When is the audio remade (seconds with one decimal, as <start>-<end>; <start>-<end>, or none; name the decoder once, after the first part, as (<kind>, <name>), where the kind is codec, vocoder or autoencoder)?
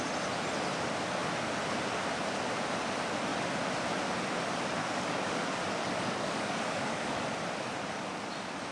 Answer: 4.8-7.2 (codec, DAC)